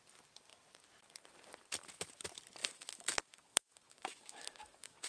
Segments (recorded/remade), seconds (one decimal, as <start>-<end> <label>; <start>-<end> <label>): 0.0-2.6 recorded; 2.6-5.1 remade